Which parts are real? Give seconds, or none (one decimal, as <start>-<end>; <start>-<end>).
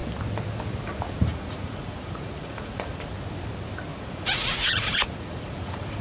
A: 0.0-1.3; 3.0-3.9